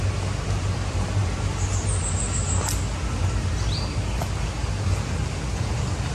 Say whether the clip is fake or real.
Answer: real